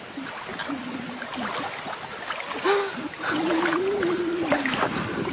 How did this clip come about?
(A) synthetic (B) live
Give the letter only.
B